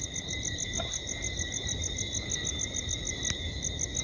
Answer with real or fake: real